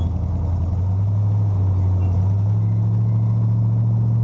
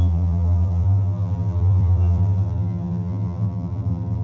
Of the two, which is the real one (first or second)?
first